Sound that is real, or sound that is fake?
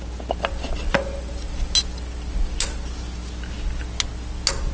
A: real